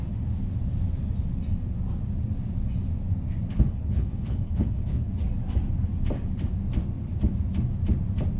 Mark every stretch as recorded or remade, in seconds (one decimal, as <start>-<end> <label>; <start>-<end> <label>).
0.0-3.5 recorded; 3.5-5.1 remade; 5.1-8.4 recorded